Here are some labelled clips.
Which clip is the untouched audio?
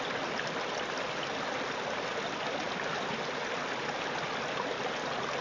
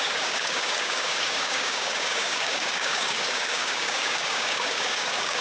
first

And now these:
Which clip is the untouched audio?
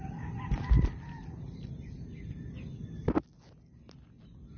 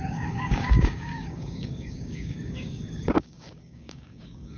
first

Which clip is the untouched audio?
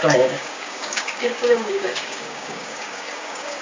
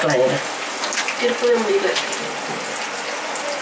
second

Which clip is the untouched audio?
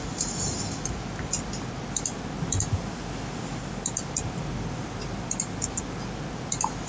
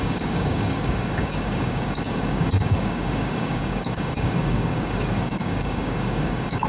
first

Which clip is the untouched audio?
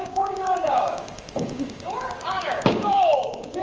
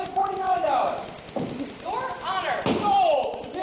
second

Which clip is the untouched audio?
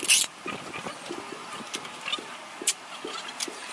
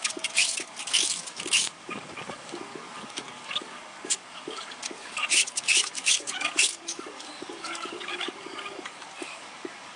first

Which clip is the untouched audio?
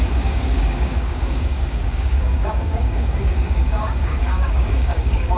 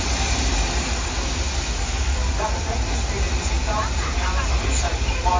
second